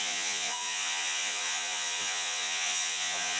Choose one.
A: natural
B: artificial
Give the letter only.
B